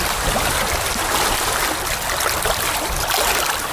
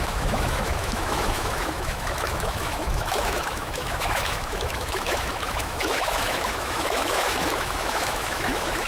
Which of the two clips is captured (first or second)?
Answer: first